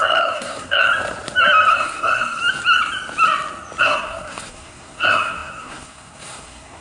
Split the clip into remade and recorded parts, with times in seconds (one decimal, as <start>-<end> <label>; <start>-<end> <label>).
0.0-0.9 remade; 0.9-1.7 recorded; 1.7-2.4 remade; 2.4-3.8 recorded; 3.8-6.8 remade